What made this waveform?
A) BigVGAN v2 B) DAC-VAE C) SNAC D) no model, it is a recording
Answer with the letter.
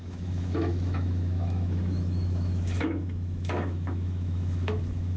B